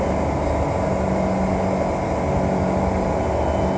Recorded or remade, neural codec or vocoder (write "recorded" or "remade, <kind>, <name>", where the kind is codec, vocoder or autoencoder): recorded